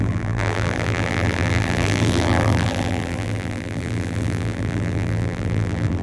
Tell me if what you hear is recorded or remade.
remade